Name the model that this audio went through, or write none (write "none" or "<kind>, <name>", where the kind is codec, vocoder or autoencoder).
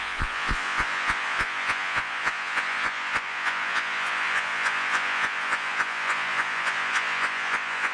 vocoder, Vocos